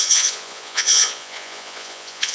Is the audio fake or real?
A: fake